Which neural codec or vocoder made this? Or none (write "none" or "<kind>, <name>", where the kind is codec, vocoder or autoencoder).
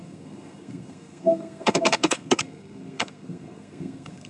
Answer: codec, SNAC